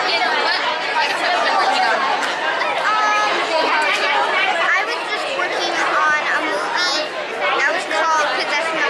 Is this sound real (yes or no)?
yes